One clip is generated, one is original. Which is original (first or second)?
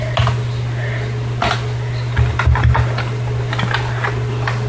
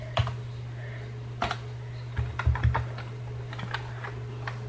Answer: first